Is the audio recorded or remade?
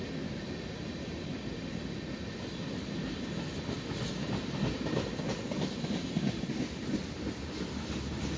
recorded